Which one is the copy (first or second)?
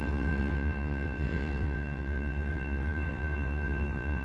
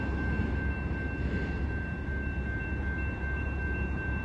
first